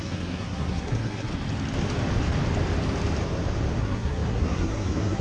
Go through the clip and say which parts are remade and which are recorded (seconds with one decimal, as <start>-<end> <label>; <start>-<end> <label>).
0.0-1.3 remade; 1.3-3.8 recorded; 3.8-5.2 remade